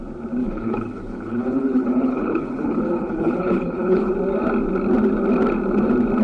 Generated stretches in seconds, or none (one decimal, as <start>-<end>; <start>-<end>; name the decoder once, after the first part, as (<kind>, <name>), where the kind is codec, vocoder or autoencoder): 0.4-4.1 (codec, HILCodec)